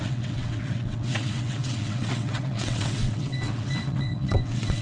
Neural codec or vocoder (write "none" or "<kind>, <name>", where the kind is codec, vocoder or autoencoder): vocoder, WaveNeXt